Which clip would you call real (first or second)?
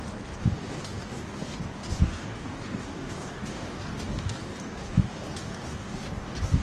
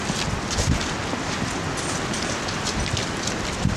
second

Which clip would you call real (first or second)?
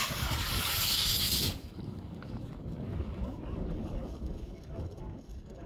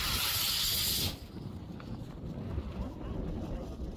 second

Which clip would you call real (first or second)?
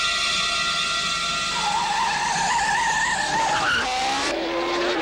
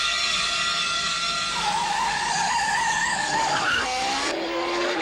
first